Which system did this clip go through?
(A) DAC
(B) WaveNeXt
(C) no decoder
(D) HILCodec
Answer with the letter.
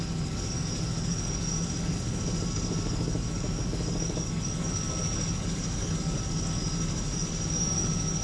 A